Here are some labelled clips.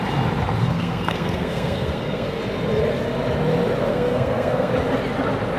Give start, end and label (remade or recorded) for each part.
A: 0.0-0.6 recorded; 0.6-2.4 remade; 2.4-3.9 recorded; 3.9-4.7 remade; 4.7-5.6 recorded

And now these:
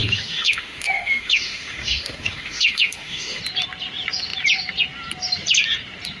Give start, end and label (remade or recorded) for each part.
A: 0.0-3.4 remade; 3.4-6.2 recorded